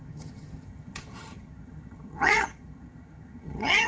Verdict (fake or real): fake